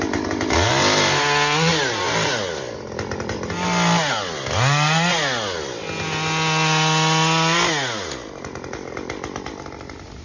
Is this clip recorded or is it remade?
recorded